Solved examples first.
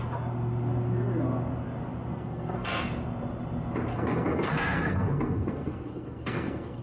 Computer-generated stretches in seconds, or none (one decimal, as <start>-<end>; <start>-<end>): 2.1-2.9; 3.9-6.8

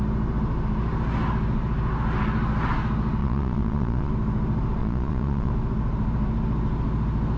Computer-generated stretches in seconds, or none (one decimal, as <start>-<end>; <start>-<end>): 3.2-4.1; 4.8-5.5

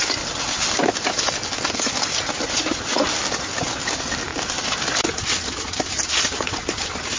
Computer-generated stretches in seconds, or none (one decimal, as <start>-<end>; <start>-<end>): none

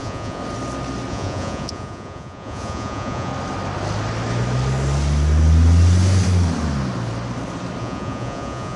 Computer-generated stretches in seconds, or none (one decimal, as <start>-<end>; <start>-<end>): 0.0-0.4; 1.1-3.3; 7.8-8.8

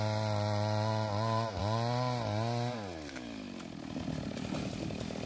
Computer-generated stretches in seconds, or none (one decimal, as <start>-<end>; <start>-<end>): none